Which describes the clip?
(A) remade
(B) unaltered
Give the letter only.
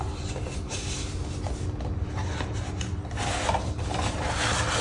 B